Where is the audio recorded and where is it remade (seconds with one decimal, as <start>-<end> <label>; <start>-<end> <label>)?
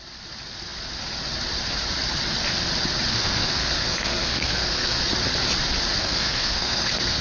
0.0-3.1 recorded; 3.1-5.0 remade; 5.0-6.0 recorded; 6.0-7.2 remade